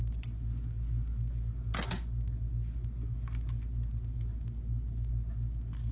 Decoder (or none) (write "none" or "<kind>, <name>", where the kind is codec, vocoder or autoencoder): none